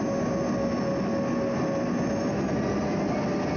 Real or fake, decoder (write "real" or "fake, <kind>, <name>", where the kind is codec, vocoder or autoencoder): real